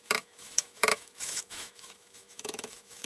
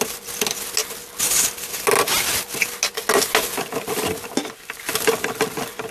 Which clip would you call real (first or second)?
second